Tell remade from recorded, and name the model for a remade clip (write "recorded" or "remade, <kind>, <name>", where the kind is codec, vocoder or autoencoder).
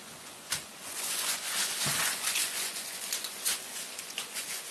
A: remade, vocoder, Vocos